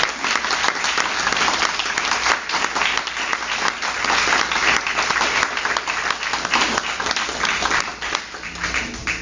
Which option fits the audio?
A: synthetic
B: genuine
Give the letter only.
B